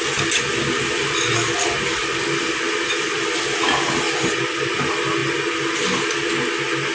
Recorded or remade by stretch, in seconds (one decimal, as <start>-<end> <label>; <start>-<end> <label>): 0.0-6.9 recorded